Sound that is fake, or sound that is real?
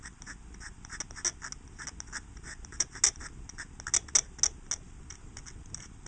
real